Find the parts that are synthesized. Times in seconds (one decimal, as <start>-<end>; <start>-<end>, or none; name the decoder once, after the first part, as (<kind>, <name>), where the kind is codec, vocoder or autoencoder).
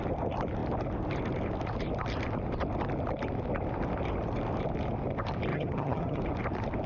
5.5-6.2 (vocoder, HiFi-GAN)